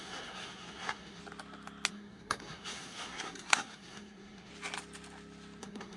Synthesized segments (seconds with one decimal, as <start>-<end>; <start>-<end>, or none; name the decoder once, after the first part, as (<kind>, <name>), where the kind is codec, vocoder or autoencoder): 0.0-1.2 (codec, SNAC); 1.9-4.5; 5.6-6.0